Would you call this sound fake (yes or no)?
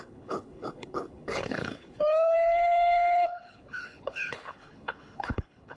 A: yes